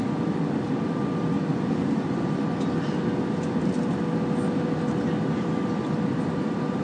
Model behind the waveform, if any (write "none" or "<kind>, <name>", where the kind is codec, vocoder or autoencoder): none